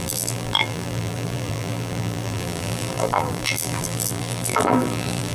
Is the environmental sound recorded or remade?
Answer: remade